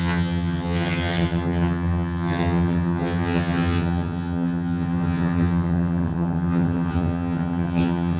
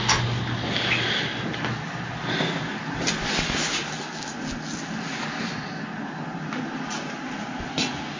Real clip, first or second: second